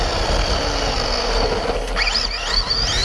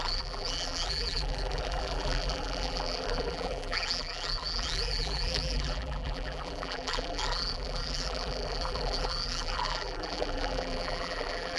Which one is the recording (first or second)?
first